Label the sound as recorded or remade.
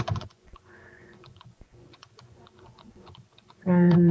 remade